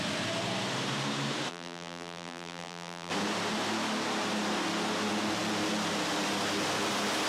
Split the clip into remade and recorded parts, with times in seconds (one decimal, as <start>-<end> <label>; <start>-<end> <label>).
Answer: 0.0-1.5 recorded; 1.5-3.1 remade; 3.1-7.3 recorded